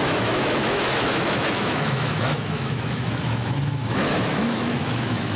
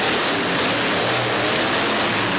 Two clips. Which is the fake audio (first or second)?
first